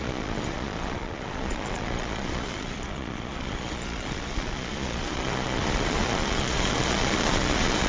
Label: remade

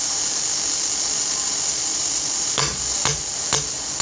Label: recorded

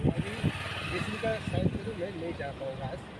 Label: recorded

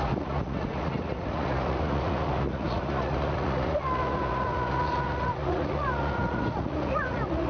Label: remade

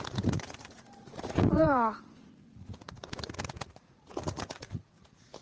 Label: remade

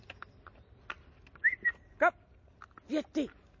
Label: recorded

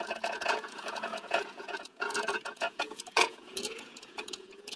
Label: remade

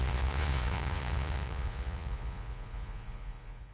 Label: remade